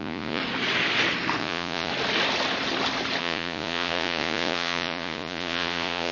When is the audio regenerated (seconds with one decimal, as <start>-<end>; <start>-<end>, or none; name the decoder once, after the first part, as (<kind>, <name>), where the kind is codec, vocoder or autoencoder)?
0.0-0.4 (vocoder, Vocos); 1.4-1.9; 3.2-6.1